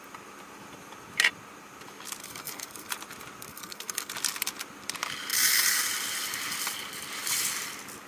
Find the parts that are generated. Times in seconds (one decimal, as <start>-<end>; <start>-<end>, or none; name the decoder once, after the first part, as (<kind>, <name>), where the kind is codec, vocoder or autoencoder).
2.2-2.9 (codec, SNAC); 3.5-4.1